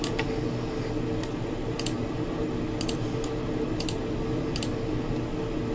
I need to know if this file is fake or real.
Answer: real